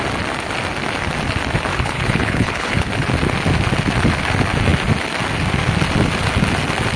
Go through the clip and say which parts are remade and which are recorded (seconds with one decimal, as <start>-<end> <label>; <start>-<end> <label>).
0.0-1.7 recorded; 1.7-2.9 remade; 2.9-7.0 recorded